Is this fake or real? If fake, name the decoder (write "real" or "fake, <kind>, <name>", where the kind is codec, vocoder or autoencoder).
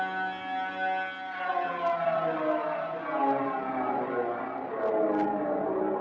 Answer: real